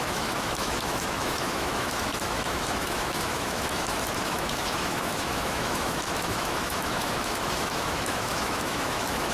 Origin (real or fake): fake